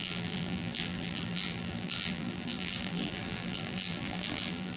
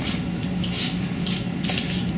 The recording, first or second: second